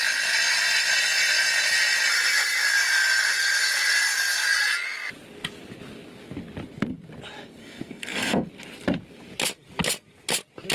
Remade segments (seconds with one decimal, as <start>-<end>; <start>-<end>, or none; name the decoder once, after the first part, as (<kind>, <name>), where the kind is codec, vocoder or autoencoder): 7.6-8.5 (codec, SNAC)